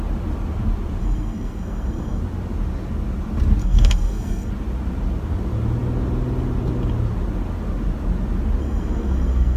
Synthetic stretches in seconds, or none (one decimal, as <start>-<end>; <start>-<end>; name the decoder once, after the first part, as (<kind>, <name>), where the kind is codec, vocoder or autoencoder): 1.0-2.2 (codec, SNAC); 3.6-4.5; 8.6-9.6